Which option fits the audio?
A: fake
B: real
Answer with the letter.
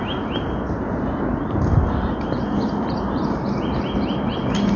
B